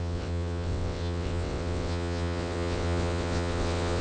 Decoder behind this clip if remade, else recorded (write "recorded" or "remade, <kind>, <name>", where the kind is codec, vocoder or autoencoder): remade, vocoder, WaveNeXt